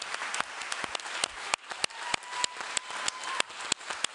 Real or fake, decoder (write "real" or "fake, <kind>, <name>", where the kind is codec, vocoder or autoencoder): real